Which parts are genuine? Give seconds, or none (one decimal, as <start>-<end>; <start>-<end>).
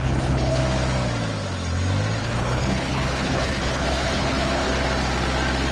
0.6-2.2; 4.7-5.7